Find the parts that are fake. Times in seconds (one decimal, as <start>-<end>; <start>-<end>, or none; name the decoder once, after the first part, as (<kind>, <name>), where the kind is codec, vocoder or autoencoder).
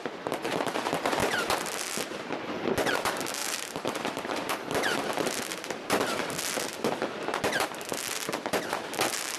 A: 3.4-6.4 (vocoder, BigVGAN v2)